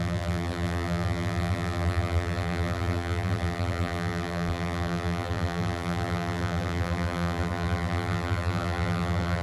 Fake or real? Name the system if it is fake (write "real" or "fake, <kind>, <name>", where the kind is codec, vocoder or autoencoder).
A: fake, vocoder, BigVGAN v2